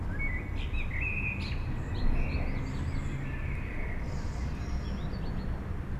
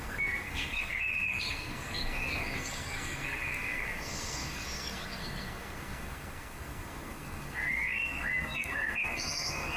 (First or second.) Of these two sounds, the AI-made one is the second